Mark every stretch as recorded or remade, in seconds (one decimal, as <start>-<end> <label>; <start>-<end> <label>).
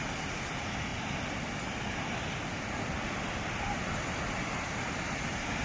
0.0-5.6 recorded